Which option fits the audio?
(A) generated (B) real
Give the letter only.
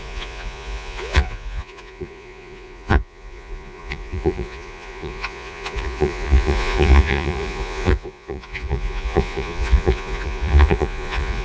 A